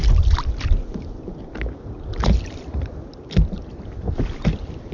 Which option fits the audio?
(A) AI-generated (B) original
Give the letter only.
B